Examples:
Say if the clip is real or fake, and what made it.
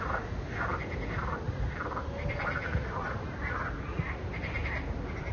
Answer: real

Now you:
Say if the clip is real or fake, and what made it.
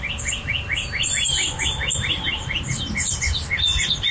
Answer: fake, vocoder, BigVGAN v2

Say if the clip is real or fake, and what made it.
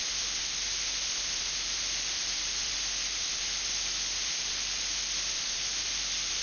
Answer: fake, vocoder, BigVGAN v2